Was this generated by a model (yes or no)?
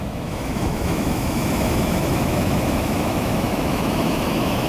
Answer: yes